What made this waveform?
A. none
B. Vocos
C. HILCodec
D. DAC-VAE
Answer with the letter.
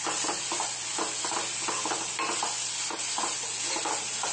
A